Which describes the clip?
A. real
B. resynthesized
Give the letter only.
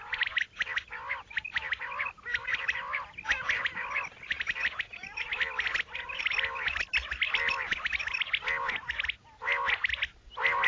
A